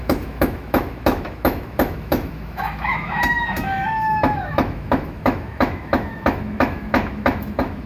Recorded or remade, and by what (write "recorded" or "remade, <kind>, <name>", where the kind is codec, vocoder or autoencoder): remade, autoencoder, DAC-VAE